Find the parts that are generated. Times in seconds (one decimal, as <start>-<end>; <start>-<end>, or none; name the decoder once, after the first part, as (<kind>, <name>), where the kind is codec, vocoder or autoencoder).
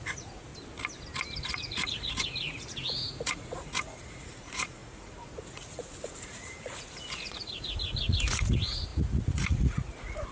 0.0-0.5 (vocoder, Vocos); 1.4-10.3